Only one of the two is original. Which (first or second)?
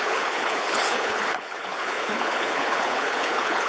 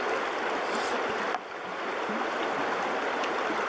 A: second